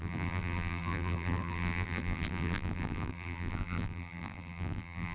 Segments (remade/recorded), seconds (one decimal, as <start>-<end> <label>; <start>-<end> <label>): 0.0-5.1 remade